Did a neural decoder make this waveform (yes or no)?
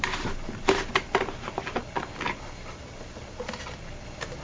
no